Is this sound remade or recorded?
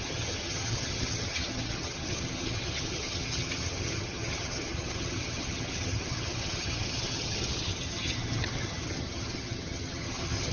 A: remade